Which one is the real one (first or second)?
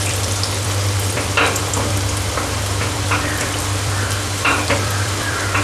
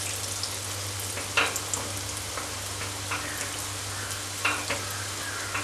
second